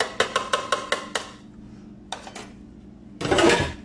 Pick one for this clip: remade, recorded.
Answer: recorded